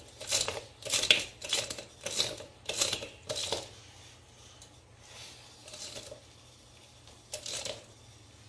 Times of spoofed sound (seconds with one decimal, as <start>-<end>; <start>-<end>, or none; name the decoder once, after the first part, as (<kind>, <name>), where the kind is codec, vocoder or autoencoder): none